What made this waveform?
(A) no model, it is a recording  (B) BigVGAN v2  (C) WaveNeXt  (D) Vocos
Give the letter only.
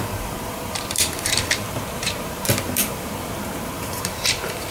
B